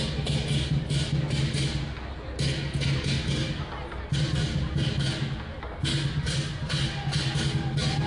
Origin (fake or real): real